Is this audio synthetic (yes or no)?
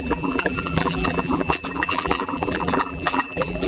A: yes